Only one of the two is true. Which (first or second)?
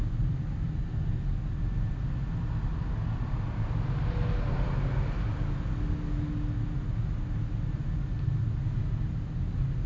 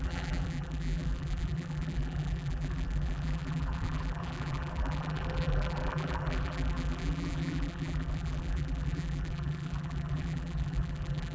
first